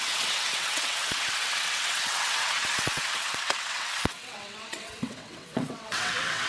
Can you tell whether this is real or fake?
fake